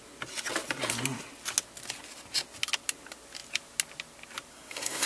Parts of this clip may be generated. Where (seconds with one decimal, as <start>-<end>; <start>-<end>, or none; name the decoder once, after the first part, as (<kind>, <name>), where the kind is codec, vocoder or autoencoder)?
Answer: 4.5-5.1 (codec, SNAC)